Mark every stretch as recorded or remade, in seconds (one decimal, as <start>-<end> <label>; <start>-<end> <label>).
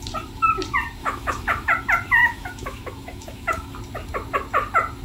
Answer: 0.0-1.0 recorded; 1.0-1.7 remade; 1.7-2.2 recorded; 2.2-3.7 remade; 3.7-5.0 recorded